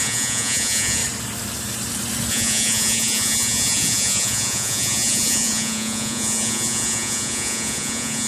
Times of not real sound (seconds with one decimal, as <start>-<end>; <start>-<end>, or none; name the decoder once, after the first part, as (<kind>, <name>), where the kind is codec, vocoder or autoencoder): 0.0-1.0 (vocoder, Vocos); 2.3-8.3